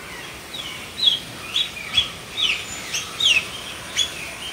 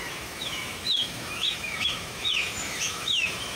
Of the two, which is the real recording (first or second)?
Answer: first